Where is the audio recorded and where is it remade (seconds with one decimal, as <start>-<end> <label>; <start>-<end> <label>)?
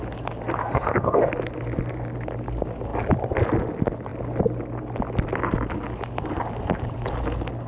0.0-0.6 recorded; 0.6-1.3 remade; 1.3-7.7 recorded